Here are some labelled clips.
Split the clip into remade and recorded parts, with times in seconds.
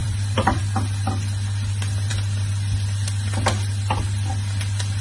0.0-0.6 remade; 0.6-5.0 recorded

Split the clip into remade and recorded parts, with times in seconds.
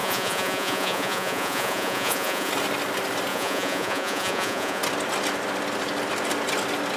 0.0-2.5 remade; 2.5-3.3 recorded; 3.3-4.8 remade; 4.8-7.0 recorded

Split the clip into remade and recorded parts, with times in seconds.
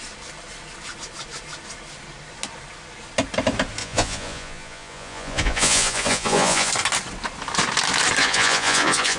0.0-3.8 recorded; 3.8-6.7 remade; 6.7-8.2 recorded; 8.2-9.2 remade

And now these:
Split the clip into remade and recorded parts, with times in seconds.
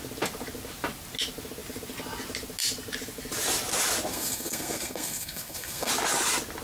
0.0-4.1 recorded; 4.1-5.9 remade; 5.9-6.6 recorded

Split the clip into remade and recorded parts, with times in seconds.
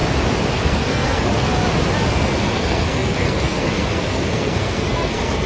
0.0-0.5 recorded; 0.5-1.5 remade; 1.5-2.1 recorded; 2.1-5.5 remade